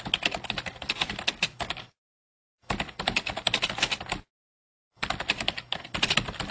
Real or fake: real